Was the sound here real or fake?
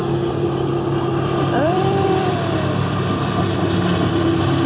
fake